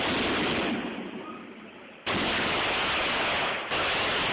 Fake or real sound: real